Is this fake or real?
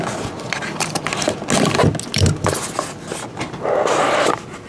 real